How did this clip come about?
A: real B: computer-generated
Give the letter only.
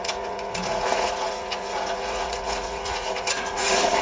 B